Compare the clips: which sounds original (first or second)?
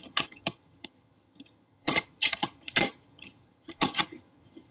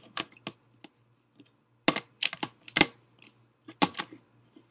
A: second